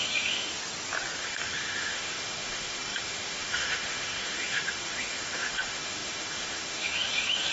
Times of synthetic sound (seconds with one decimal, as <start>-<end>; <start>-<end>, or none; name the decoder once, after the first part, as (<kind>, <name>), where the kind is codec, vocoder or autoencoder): 0.0-0.5 (autoencoder, DAC-VAE); 1.2-7.5